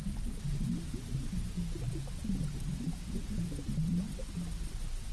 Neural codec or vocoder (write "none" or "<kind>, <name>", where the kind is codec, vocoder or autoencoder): none